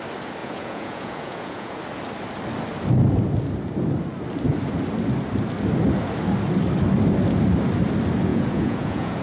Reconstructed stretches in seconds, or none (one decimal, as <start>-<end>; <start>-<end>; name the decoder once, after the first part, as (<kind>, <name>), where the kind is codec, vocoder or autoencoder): 0.4-1.8 (vocoder, Vocos); 8.3-9.2